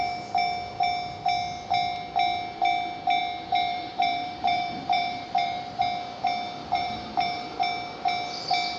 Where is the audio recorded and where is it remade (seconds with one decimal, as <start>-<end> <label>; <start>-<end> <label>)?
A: 0.0-3.7 recorded; 3.7-5.8 remade; 5.8-6.6 recorded; 6.6-7.6 remade; 7.6-8.8 recorded

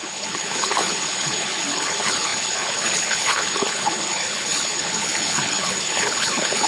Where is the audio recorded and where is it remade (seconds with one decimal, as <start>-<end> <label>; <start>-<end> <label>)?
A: 0.0-6.7 remade

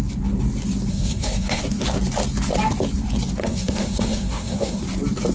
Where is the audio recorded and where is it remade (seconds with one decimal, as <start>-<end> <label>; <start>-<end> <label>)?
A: 0.0-0.9 recorded; 0.9-1.6 remade; 1.6-3.4 recorded; 3.4-4.8 remade; 4.8-5.3 recorded

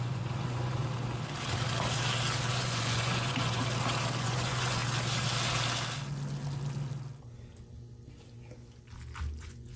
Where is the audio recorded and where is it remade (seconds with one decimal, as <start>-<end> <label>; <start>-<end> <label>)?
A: 0.0-0.8 remade; 0.8-2.5 recorded; 2.5-3.6 remade; 3.6-4.2 recorded; 4.2-4.8 remade; 4.8-9.4 recorded; 9.4-9.8 remade

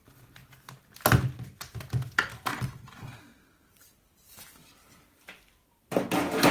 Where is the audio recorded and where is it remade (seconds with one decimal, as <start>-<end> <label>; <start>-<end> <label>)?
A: 0.0-6.5 recorded

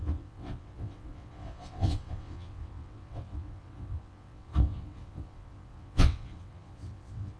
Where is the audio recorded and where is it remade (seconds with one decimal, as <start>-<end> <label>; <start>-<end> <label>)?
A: 0.0-7.4 remade

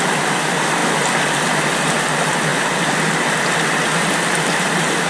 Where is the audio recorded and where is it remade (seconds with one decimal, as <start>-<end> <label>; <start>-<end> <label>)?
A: 0.0-5.1 recorded